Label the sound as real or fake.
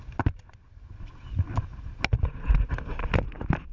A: real